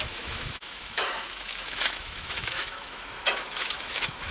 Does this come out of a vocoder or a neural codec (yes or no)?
yes